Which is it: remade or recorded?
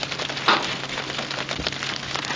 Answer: recorded